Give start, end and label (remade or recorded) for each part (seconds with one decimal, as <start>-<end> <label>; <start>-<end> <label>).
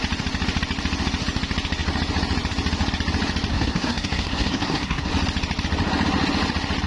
0.0-3.5 recorded; 3.5-5.1 remade; 5.1-6.9 recorded